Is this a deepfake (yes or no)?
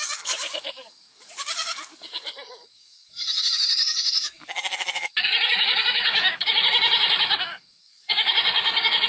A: yes